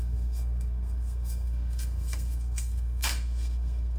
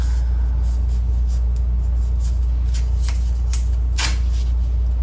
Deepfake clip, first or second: first